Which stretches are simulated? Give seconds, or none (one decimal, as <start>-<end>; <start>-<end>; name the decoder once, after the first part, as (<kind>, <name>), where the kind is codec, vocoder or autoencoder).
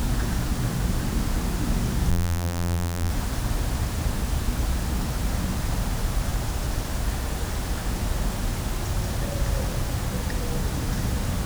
2.1-3.1 (vocoder, BigVGAN v2)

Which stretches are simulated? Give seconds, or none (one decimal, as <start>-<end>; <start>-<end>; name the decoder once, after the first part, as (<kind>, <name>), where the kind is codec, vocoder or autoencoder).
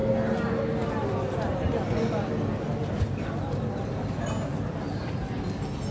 none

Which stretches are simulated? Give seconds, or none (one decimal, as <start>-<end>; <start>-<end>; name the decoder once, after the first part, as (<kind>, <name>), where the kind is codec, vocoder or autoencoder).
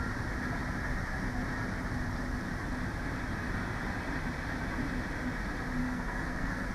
5.8-6.7 (codec, SNAC)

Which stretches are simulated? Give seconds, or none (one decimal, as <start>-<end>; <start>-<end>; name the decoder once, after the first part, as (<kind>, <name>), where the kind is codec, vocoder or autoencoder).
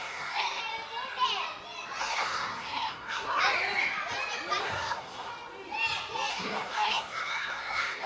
0.0-0.6 (codec, SNAC); 2.0-3.4; 4.6-5.3; 6.3-8.1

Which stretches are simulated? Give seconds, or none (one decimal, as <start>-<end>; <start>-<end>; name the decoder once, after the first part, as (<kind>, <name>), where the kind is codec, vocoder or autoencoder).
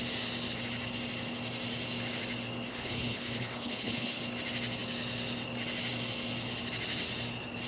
2.7-4.2 (codec, HILCodec)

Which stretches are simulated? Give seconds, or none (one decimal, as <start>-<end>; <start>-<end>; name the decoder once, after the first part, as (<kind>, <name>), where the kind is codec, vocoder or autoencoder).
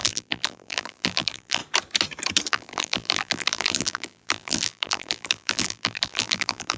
0.0-1.6 (vocoder, BigVGAN v2); 2.5-6.8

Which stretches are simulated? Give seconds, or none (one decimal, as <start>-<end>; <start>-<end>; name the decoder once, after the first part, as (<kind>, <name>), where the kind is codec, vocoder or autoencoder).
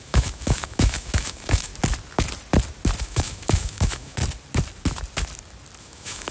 0.0-1.7 (autoencoder, DAC-VAE); 3.0-4.2; 5.8-6.3